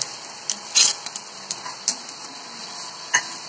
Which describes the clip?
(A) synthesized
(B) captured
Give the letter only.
B